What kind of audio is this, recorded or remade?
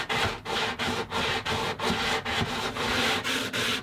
recorded